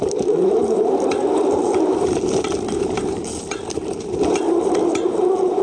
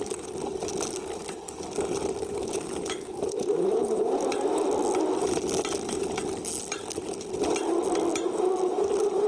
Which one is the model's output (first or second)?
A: first